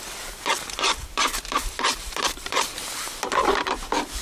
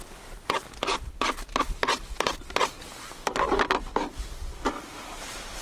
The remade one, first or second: first